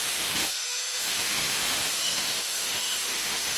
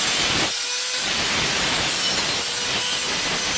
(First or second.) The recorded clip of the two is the second